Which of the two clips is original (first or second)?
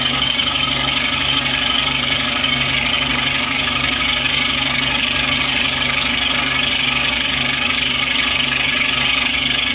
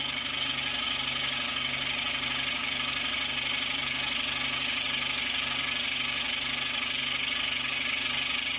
second